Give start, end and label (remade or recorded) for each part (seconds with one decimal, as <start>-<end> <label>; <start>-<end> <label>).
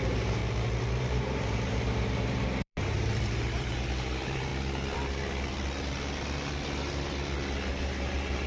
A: 0.0-0.4 remade; 0.4-1.0 recorded; 1.0-4.5 remade; 4.5-7.7 recorded; 7.7-8.5 remade